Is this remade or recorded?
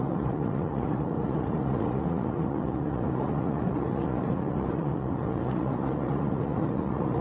remade